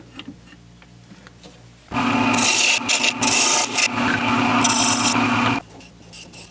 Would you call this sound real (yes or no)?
yes